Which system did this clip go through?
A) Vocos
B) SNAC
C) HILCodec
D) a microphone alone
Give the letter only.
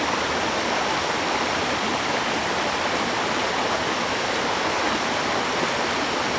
D